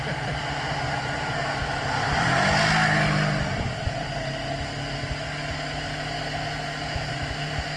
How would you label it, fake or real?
real